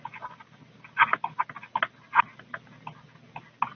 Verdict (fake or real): real